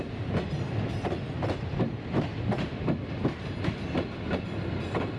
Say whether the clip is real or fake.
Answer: real